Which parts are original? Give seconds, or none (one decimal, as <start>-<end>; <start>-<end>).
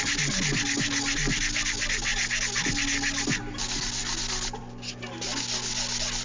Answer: 0.0-6.2